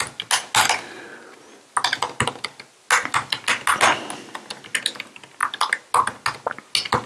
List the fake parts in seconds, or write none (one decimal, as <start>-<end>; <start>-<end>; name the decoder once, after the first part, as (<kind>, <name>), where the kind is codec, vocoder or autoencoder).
none